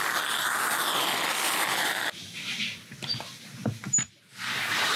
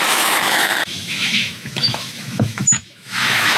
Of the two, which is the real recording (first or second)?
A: first